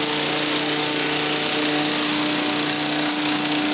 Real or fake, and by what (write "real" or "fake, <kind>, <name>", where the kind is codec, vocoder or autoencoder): real